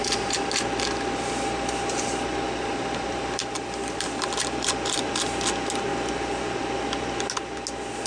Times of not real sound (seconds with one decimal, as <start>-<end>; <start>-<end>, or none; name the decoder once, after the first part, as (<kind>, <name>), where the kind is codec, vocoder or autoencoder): 2.7-5.1 (vocoder, BigVGAN v2)